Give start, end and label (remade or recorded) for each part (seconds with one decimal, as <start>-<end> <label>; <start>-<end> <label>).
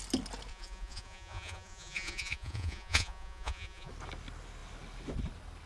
0.0-0.5 recorded; 0.5-3.9 remade; 3.9-5.7 recorded